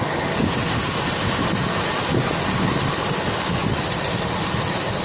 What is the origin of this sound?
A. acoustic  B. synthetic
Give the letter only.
A